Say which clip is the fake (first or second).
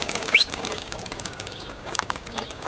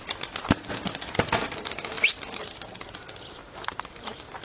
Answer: first